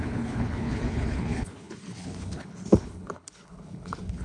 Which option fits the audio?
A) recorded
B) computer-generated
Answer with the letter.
B